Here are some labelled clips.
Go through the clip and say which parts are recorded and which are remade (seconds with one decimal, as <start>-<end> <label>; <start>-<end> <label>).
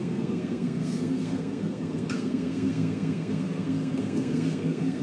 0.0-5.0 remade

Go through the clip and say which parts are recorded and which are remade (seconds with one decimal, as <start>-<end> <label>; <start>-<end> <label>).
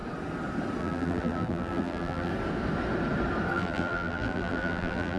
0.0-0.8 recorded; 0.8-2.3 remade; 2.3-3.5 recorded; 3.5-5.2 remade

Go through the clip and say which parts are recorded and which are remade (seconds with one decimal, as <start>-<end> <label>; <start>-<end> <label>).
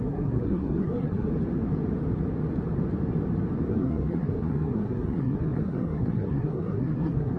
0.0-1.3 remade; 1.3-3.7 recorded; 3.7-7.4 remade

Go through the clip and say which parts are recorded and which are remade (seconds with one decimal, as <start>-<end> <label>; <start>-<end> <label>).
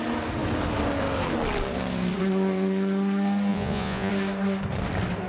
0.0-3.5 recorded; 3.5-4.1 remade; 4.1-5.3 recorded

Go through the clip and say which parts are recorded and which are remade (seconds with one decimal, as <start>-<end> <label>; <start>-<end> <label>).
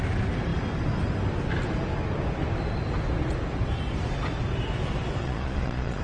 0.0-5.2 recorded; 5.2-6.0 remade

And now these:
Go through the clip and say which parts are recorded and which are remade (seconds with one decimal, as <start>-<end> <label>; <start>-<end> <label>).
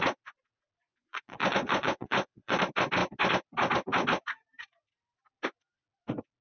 0.0-0.9 recorded; 0.9-2.6 remade; 2.6-6.4 recorded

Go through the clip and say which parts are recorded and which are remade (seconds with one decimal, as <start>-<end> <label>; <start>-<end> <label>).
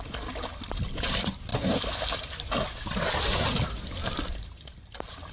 0.0-5.3 recorded